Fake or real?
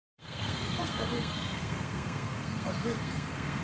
fake